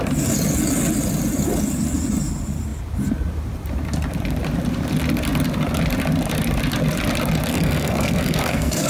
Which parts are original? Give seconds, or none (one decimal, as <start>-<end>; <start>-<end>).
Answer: 0.0-7.5